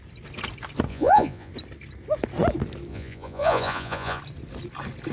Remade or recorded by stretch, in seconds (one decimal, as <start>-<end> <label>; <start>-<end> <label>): 0.0-0.9 recorded; 0.9-1.5 remade; 1.5-2.9 recorded; 2.9-4.2 remade; 4.2-5.1 recorded